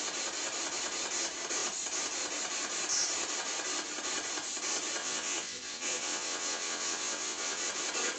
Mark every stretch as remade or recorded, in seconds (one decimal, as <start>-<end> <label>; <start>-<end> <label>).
0.0-5.0 recorded; 5.0-7.7 remade; 7.7-8.2 recorded

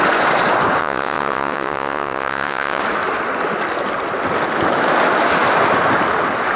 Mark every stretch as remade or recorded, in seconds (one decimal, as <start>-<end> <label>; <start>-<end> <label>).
0.0-0.8 recorded; 0.8-2.8 remade; 2.8-6.6 recorded

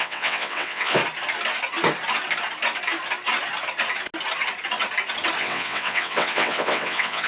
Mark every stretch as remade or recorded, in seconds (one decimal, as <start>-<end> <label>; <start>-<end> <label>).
0.0-1.0 remade; 1.0-5.4 recorded; 5.4-7.3 remade

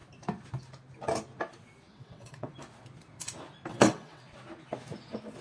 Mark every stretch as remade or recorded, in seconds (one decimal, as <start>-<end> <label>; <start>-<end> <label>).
0.0-1.9 recorded; 1.9-2.5 remade; 2.5-3.7 recorded; 3.7-4.2 remade; 4.2-5.4 recorded

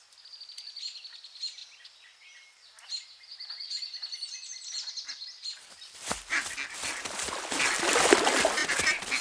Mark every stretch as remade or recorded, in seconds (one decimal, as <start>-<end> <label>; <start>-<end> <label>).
0.0-9.2 recorded

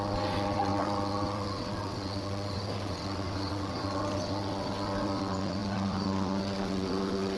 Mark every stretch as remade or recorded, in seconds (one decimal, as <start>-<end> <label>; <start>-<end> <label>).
0.0-7.4 remade